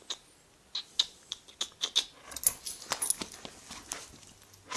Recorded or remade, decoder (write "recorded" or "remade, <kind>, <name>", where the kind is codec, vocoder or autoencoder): recorded